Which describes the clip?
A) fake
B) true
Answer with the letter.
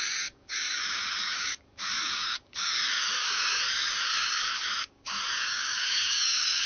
A